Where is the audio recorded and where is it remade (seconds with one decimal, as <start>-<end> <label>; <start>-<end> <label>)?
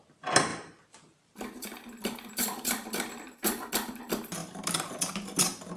0.0-0.5 recorded; 0.5-4.0 remade; 4.0-4.4 recorded; 4.4-4.9 remade; 4.9-5.8 recorded